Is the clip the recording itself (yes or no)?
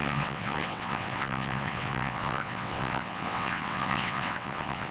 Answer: no